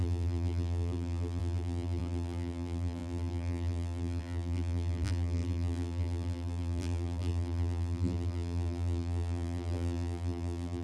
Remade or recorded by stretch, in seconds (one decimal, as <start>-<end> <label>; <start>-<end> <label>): 0.0-10.8 remade